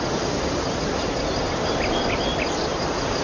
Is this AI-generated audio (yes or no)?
no